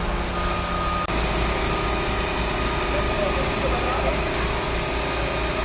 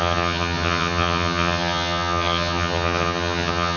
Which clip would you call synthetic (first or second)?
second